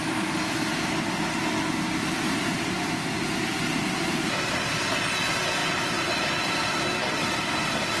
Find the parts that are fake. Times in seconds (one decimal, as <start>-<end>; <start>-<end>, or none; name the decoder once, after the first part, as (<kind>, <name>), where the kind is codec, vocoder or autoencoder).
none